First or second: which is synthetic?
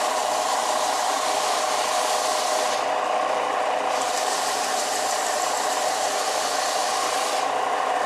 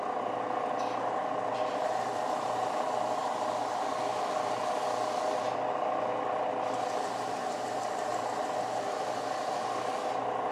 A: first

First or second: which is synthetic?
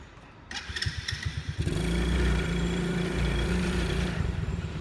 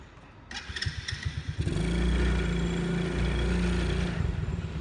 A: first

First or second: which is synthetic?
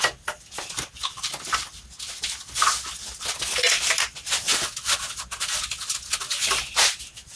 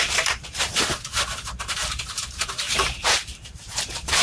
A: second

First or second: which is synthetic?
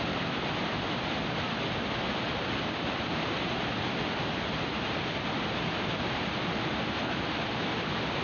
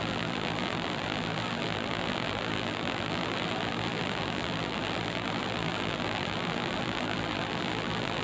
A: second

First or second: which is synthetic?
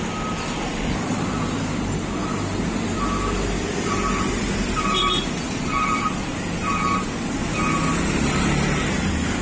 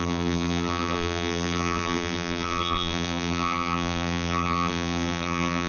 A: second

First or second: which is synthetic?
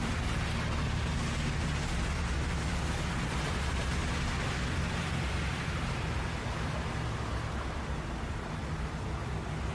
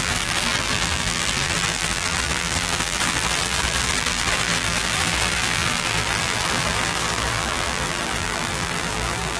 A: second